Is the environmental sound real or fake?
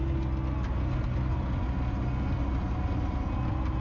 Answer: real